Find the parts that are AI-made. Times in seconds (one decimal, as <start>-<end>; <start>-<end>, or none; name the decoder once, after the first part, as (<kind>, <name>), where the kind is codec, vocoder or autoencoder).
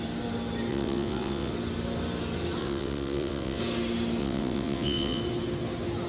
0.7-1.5 (vocoder, WaveNeXt); 2.6-3.6; 4.2-5.2